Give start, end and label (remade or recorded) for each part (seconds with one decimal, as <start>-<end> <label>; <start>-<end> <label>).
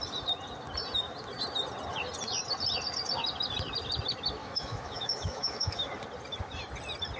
0.0-4.4 recorded; 4.4-5.9 remade; 5.9-7.2 recorded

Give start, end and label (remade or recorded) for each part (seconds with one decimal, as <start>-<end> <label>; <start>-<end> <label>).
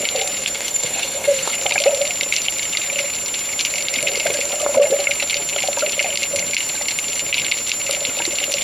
0.0-0.4 recorded; 0.4-1.5 remade; 1.5-8.6 recorded